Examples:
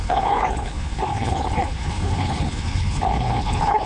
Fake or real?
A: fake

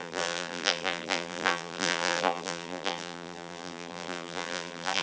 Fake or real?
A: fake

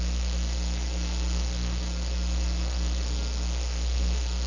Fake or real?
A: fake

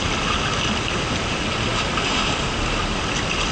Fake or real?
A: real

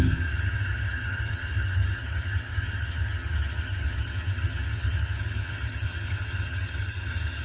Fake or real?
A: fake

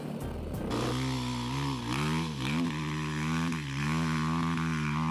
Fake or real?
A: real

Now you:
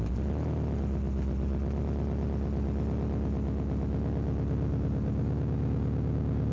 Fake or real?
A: real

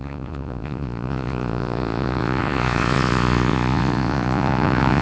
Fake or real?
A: fake